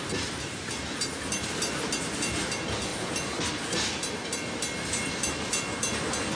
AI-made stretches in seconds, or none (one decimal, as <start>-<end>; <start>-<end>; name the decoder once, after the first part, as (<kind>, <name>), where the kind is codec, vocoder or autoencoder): none